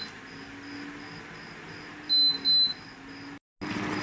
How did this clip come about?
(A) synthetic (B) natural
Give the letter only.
B